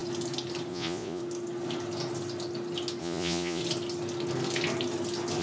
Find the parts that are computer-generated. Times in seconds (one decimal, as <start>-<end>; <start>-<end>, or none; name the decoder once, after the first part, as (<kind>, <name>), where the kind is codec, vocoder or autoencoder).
0.7-1.2 (vocoder, Vocos); 3.0-3.6